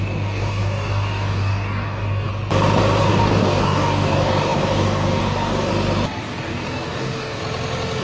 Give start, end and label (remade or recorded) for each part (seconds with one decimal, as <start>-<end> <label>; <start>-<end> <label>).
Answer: 0.0-2.3 remade; 2.3-3.0 recorded; 3.0-5.7 remade; 5.7-6.2 recorded; 6.2-7.4 remade; 7.4-8.0 recorded